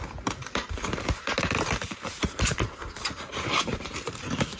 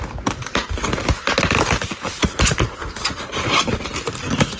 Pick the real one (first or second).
second